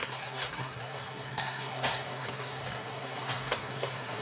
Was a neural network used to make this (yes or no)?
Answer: yes